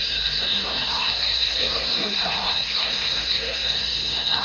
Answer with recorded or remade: remade